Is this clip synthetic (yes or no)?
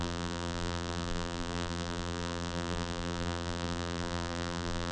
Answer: yes